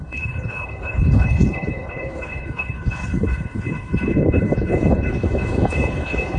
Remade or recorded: remade